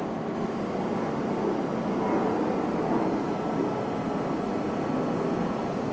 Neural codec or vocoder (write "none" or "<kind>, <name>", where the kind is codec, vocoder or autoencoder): none